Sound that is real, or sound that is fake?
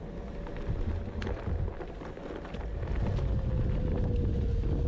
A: real